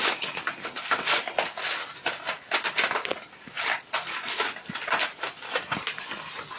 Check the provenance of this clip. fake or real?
real